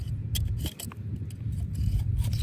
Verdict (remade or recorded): recorded